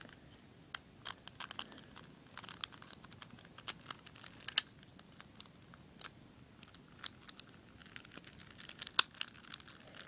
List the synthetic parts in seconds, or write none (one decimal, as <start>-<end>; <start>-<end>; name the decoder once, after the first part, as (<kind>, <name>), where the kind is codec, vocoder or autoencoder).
none